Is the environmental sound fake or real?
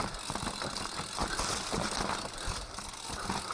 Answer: real